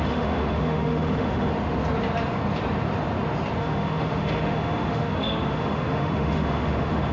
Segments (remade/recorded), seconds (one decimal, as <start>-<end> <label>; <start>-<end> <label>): 0.0-1.5 remade; 1.5-3.6 recorded; 3.6-7.1 remade

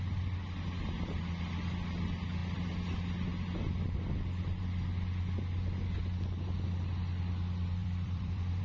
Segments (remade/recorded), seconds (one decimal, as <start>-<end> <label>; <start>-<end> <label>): 0.0-7.8 recorded; 7.8-8.6 remade

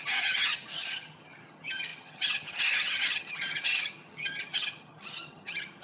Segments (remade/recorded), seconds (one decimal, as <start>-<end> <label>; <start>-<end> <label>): 0.0-5.8 remade

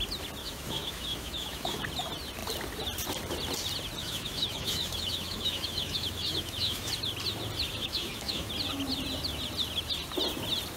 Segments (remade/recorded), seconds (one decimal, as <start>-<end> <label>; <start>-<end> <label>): 0.0-0.4 recorded; 0.4-1.8 remade; 1.8-4.0 recorded; 4.0-6.9 remade; 6.9-7.8 recorded; 7.8-8.5 remade; 8.5-10.8 recorded

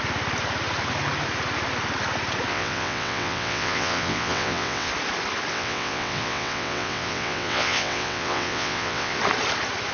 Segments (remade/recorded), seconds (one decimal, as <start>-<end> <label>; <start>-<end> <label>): 0.0-2.5 recorded; 2.5-4.9 remade; 4.9-5.5 recorded; 5.5-9.2 remade; 9.2-9.9 recorded

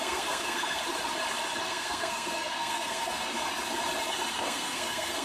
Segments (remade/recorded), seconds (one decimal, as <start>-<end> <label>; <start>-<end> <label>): 0.0-0.8 remade; 0.8-1.6 recorded; 1.6-3.4 remade; 3.4-4.3 recorded; 4.3-5.2 remade